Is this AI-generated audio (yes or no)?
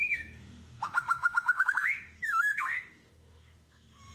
yes